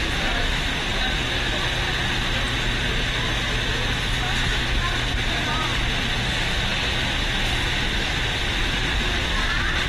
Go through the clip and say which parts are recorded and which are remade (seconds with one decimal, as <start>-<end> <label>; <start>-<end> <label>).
0.0-9.9 recorded